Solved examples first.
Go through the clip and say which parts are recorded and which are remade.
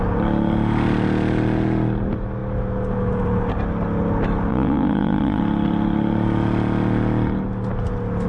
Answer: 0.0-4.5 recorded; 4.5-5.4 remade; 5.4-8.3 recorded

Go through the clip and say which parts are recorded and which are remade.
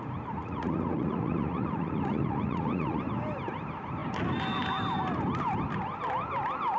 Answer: 0.0-0.4 recorded; 0.4-3.0 remade; 3.0-6.8 recorded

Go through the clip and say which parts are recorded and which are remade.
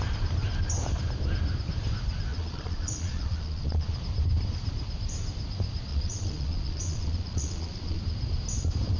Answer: 0.0-2.3 recorded; 2.3-4.0 remade; 4.0-5.9 recorded; 5.9-8.0 remade; 8.0-9.0 recorded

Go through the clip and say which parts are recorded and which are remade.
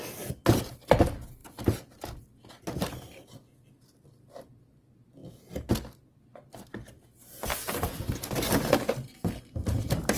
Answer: 0.0-10.2 recorded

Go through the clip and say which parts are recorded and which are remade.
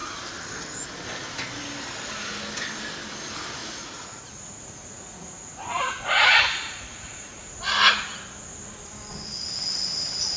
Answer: 0.0-3.6 recorded; 3.6-8.0 remade; 8.0-10.4 recorded